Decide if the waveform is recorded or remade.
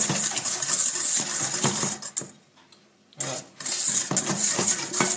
recorded